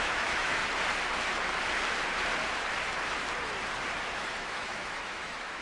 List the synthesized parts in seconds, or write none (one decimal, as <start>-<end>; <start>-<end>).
0.0-0.6; 4.0-5.6